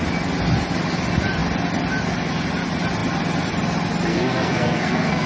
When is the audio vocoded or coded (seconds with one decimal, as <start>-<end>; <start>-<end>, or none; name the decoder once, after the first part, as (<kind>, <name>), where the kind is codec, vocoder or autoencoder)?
4.1-5.3 (codec, SNAC)